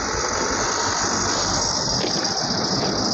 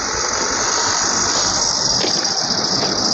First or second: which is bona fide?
first